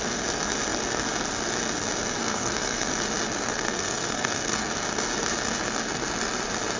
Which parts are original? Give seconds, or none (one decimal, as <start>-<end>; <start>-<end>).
0.0-2.2; 2.9-3.5; 4.7-6.8